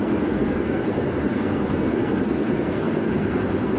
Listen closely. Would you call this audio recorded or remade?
remade